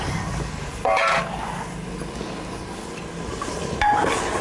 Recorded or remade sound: recorded